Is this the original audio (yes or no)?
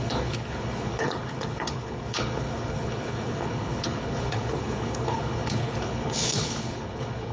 no